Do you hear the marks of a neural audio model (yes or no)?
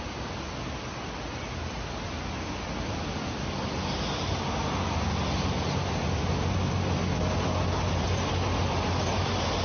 no